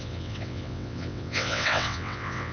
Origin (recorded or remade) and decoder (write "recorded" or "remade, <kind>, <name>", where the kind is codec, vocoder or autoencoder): remade, vocoder, WaveNeXt